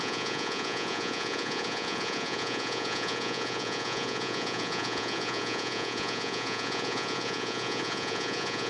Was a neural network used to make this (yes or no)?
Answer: yes